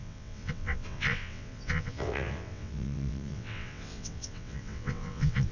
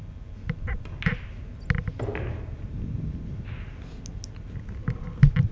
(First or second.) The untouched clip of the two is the second